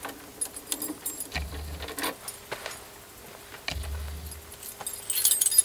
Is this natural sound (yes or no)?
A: yes